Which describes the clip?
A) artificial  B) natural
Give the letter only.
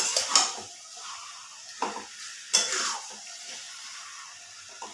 B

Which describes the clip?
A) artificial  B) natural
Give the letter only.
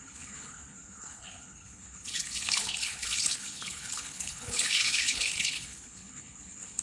A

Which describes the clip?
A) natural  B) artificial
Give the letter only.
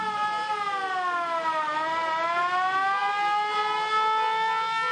A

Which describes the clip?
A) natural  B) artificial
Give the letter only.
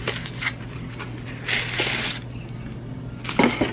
A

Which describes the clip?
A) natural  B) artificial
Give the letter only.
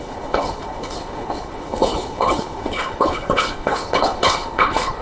B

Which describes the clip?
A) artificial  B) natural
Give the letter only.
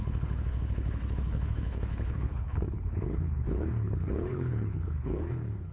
A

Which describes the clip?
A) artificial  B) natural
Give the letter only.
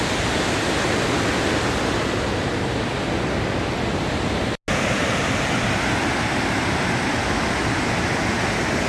B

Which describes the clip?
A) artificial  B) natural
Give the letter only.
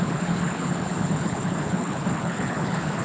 A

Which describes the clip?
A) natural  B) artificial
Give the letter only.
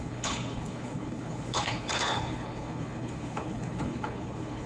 B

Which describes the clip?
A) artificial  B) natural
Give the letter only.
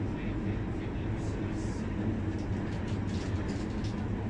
B